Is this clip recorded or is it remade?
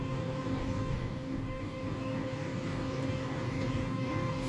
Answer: remade